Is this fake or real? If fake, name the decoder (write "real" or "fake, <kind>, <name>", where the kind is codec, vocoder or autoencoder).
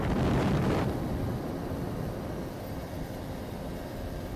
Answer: fake, vocoder, BigVGAN v2